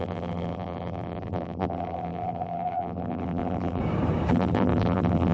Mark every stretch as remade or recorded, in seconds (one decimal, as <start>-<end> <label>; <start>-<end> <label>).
0.0-3.8 remade; 3.8-4.3 recorded; 4.3-5.3 remade